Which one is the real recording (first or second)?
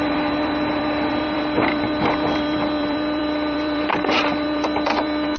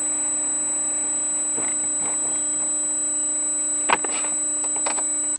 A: second